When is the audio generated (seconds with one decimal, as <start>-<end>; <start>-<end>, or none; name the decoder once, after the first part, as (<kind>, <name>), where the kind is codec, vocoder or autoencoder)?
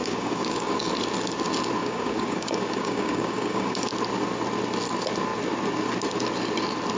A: 0.0-0.9 (codec, DAC); 1.8-3.9